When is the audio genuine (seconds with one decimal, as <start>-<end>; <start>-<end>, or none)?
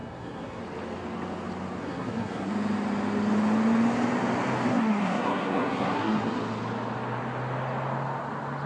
0.6-1.8; 2.5-4.7; 6.4-8.7